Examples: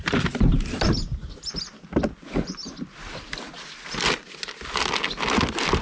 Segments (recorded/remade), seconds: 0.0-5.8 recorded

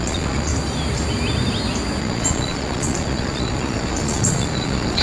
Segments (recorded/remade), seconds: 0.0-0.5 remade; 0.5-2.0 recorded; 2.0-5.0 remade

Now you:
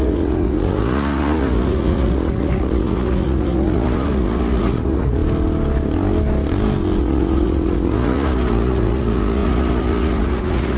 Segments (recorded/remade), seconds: 0.0-5.2 remade; 5.2-7.0 recorded; 7.0-10.8 remade

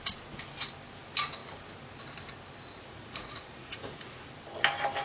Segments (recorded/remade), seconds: 0.0-2.7 recorded; 2.7-4.3 remade; 4.3-5.0 recorded